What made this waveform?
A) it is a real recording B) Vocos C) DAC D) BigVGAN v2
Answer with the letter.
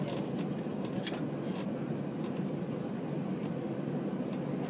A